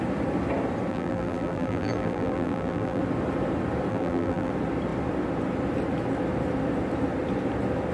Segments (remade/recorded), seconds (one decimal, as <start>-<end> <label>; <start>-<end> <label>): 0.0-0.9 recorded; 0.9-3.0 remade; 3.0-3.9 recorded; 3.9-4.5 remade; 4.5-7.9 recorded